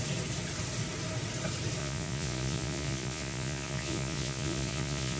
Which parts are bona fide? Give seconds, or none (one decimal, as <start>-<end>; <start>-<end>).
0.0-1.8